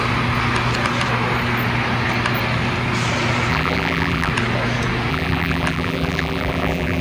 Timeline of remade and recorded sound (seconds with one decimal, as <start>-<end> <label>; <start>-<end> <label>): 0.0-3.5 recorded; 3.5-4.3 remade; 4.3-5.1 recorded; 5.1-7.0 remade